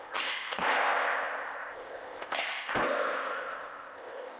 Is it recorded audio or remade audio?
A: remade